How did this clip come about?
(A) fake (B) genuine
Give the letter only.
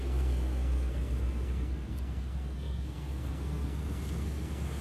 A